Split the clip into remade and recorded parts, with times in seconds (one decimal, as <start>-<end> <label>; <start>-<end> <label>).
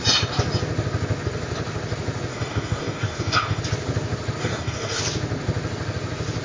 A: 0.0-2.3 recorded; 2.3-3.6 remade; 3.6-4.4 recorded; 4.4-5.0 remade; 5.0-6.4 recorded